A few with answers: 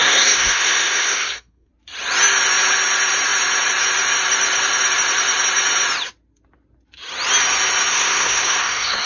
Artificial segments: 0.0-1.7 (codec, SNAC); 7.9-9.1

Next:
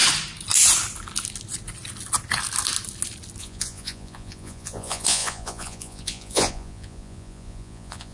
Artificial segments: 3.4-8.1 (vocoder, Vocos)

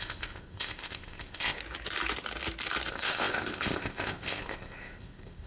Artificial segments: 0.0-1.6 (codec, ZipCodec); 2.9-5.5

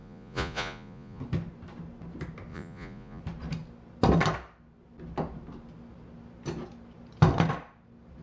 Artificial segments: 0.0-1.2 (vocoder, Vocos); 2.5-3.2